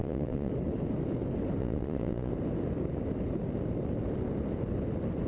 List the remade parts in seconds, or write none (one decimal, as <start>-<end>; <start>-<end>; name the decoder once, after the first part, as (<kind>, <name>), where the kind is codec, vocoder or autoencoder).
0.0-0.5 (vocoder, Vocos); 1.6-2.3